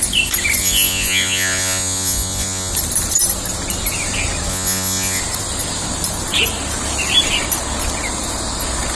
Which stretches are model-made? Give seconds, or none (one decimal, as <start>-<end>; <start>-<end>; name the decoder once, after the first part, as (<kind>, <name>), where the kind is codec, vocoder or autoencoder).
0.6-2.7 (vocoder, Vocos); 4.5-5.2